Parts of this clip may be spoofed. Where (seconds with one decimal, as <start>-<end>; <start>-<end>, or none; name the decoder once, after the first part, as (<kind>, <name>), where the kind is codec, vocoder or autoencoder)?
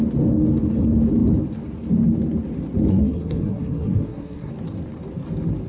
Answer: 2.9-4.5 (codec, SNAC)